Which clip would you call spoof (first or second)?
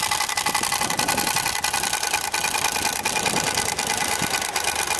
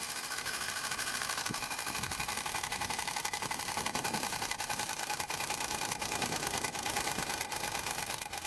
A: second